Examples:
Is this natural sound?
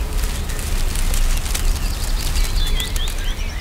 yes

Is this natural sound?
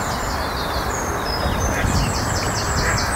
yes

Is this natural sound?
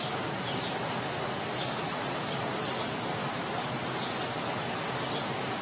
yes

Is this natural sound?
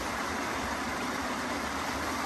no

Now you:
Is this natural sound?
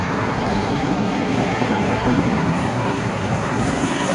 no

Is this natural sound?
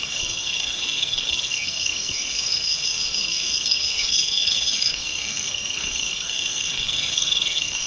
no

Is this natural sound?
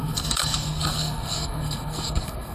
no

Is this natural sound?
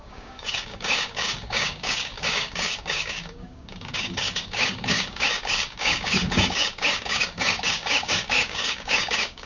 no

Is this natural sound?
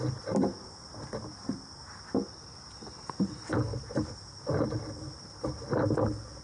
yes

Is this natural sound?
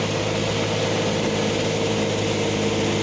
yes